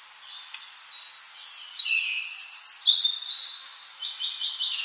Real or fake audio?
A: real